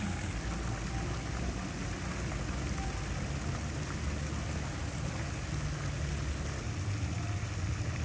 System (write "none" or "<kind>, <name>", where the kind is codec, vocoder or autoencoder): none